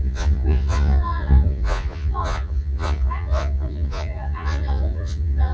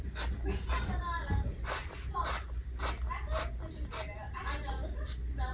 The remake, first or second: first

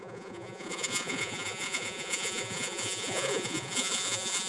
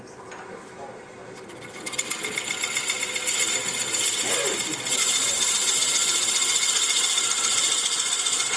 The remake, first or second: first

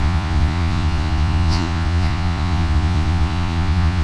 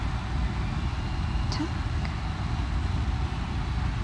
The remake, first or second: first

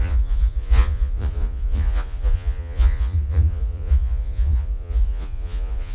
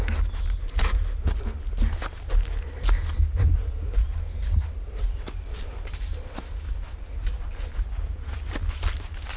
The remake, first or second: first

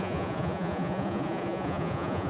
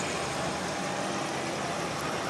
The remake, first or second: first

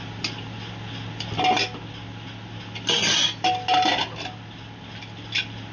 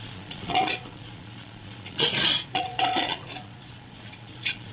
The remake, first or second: second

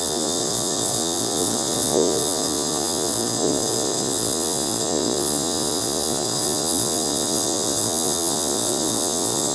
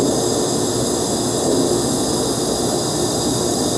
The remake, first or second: first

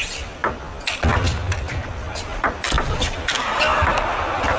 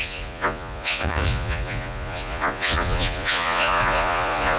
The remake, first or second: second